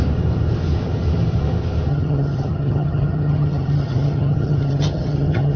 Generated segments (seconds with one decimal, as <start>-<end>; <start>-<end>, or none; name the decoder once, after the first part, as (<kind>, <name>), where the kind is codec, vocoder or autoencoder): 1.9-5.6 (vocoder, HiFi-GAN)